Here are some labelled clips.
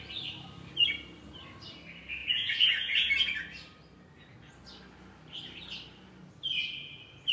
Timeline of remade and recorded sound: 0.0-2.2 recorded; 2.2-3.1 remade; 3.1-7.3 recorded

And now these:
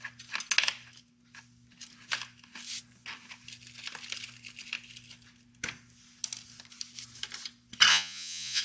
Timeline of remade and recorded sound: 0.0-7.9 recorded; 7.9-8.6 remade